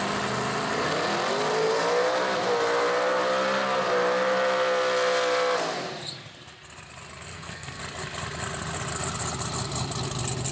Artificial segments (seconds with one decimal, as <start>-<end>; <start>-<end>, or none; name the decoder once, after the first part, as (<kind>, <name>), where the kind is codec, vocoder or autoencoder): 7.3-7.8 (codec, SNAC)